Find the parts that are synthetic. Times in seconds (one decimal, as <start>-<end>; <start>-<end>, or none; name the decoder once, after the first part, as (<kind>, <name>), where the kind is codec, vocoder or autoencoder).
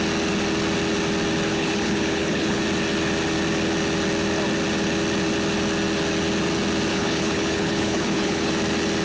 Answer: 1.5-2.6 (codec, HILCodec); 6.9-8.5